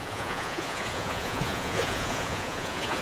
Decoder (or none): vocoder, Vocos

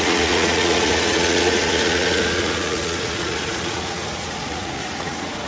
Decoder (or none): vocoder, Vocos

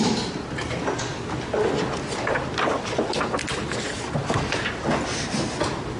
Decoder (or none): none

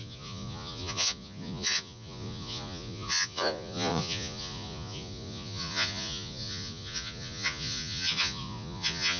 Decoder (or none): vocoder, Vocos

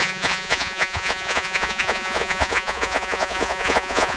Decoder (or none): vocoder, Vocos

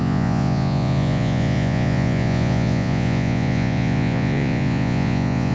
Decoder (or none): vocoder, Vocos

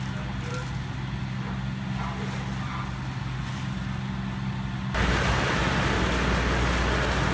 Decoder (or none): none